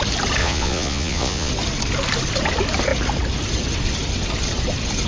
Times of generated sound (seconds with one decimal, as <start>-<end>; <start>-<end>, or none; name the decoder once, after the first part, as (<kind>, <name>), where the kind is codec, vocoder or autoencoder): 0.4-1.5 (vocoder, Vocos)

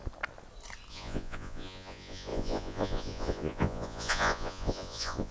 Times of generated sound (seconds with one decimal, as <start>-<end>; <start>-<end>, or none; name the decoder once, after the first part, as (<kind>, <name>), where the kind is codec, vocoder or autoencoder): 0.9-5.3 (vocoder, Vocos)

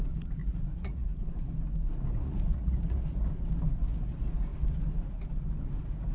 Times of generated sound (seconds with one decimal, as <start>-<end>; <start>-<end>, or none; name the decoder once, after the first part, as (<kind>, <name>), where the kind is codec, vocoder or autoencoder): 0.4-1.2 (vocoder, Vocos); 2.2-3.0

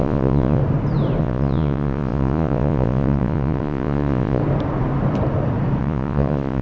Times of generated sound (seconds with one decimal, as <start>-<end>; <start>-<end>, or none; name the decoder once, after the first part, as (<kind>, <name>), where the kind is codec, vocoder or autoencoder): 0.0-0.6 (vocoder, Vocos); 1.2-4.4; 5.8-6.6

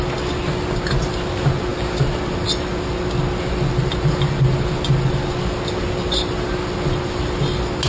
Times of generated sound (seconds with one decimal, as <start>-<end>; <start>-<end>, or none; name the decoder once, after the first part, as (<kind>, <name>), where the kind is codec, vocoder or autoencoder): none

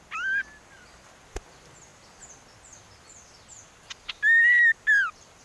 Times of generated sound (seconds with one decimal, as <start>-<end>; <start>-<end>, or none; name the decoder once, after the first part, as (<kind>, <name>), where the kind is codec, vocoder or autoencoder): none